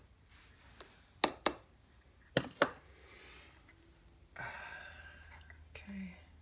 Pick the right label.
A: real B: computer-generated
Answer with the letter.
A